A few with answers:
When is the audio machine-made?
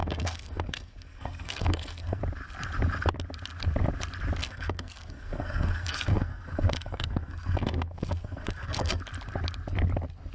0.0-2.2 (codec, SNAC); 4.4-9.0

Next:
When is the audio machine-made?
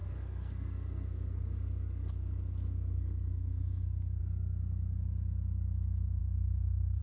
0.0-4.2 (codec, SNAC); 6.2-7.0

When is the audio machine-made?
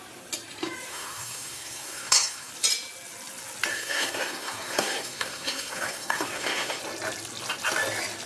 0.9-2.5 (codec, SNAC); 3.7-6.8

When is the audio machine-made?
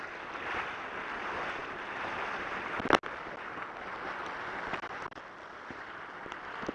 none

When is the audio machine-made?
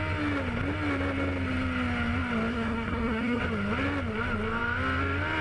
2.5-3.4 (codec, SNAC)